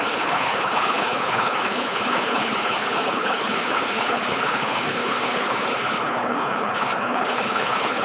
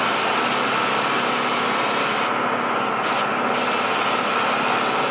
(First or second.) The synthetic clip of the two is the first